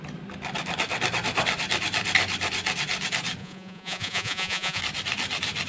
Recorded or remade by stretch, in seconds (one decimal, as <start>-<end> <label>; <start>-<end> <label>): 0.0-3.4 recorded; 3.4-4.8 remade; 4.8-5.7 recorded